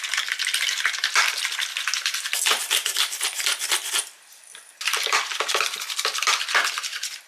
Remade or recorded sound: recorded